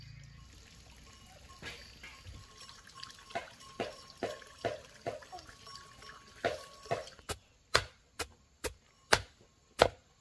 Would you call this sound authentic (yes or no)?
yes